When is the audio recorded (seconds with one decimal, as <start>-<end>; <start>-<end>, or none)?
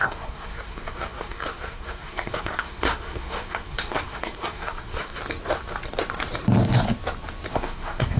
5.2-7.5